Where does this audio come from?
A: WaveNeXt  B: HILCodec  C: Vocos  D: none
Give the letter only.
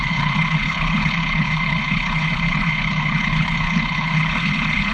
B